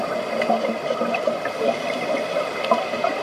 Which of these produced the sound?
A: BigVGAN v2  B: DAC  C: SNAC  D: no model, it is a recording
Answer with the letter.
D